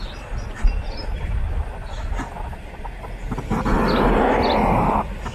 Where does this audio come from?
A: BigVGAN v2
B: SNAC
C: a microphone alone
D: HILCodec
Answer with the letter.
C